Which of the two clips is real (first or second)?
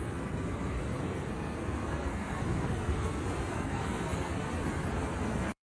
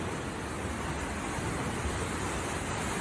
second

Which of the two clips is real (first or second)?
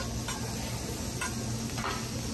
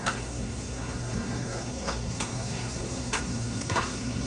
first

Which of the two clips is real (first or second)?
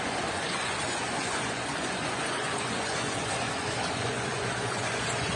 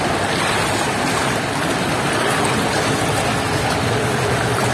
second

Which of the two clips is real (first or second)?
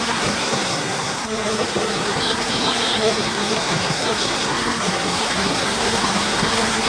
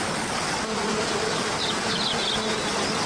second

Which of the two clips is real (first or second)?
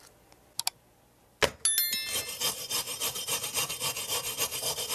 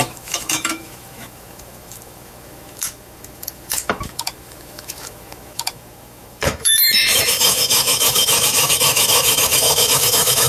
first